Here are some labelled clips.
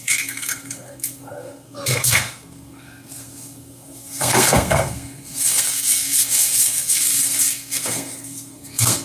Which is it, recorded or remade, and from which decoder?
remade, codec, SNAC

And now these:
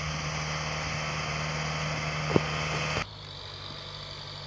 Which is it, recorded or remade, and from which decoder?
recorded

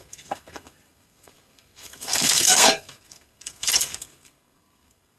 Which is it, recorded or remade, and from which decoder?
remade, codec, SNAC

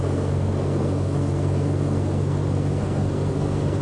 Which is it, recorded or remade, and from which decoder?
remade, codec, SNAC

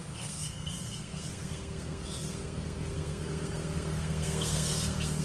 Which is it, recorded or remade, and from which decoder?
remade, codec, SNAC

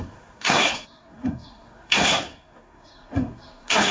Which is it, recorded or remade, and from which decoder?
remade, codec, SNAC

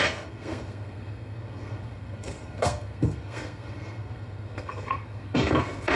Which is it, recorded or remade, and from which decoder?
remade, codec, SNAC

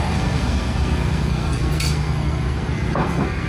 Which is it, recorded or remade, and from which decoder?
remade, codec, SNAC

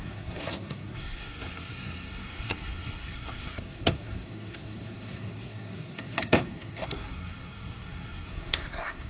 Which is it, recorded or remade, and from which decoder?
remade, codec, SNAC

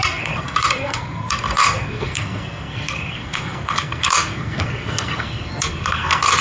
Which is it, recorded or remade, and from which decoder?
remade, codec, SNAC